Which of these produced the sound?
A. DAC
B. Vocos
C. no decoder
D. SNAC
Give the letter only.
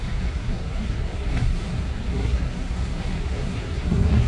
D